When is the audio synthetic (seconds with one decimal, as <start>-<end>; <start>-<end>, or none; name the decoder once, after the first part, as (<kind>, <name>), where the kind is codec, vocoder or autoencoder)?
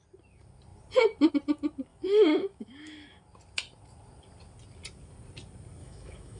1.9-3.2 (autoencoder, DAC-VAE); 5.8-6.4